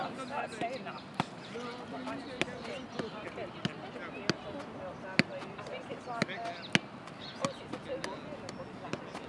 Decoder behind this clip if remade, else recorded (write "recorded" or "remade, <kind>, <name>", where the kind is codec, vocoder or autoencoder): recorded